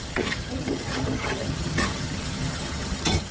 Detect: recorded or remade remade